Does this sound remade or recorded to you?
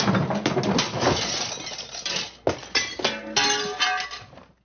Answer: recorded